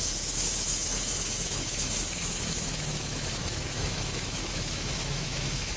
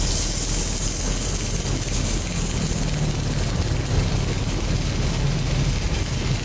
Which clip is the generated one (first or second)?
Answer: first